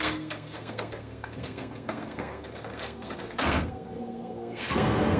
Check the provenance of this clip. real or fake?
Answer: fake